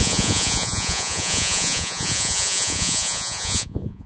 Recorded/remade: remade